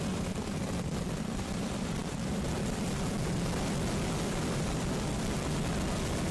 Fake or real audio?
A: real